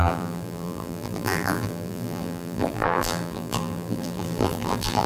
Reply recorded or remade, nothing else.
remade